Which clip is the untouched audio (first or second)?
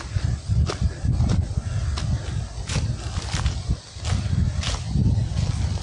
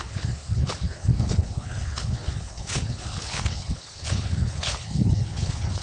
first